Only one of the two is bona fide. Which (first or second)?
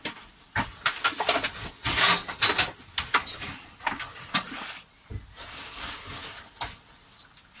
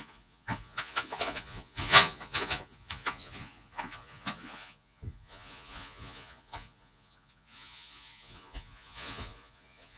first